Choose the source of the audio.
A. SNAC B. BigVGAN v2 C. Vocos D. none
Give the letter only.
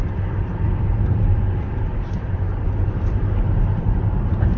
B